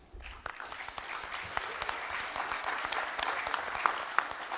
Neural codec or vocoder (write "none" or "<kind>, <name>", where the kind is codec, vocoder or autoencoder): none